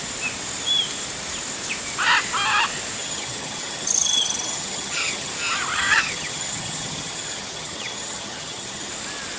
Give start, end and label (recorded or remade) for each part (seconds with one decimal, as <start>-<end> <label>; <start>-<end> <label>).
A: 0.0-3.0 recorded; 3.0-5.3 remade; 5.3-5.7 recorded; 5.7-8.9 remade; 8.9-9.4 recorded